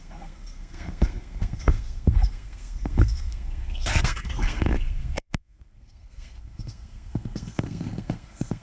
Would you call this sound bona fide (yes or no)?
no